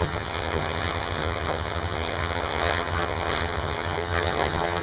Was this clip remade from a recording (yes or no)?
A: yes